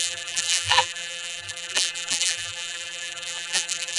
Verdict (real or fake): fake